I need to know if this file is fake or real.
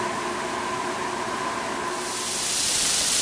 real